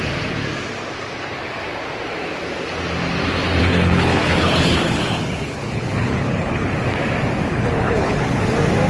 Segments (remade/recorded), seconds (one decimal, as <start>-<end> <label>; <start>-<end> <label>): 0.0-3.6 recorded; 3.6-6.7 remade; 6.7-7.5 recorded; 7.5-8.4 remade; 8.4-8.9 recorded